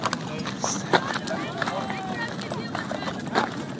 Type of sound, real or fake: real